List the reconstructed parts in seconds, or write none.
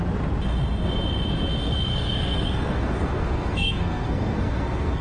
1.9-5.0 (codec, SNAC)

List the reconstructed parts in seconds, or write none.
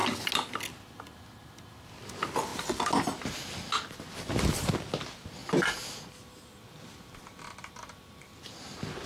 none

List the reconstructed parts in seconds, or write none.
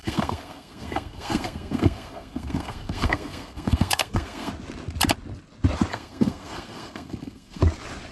0.0-4.5 (codec, SNAC); 5.9-7.6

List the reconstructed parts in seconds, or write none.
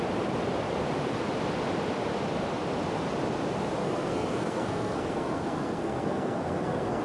3.8-7.0 (codec, SNAC)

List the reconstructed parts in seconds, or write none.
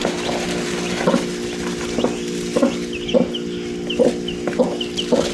none